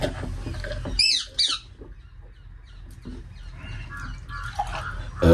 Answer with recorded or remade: recorded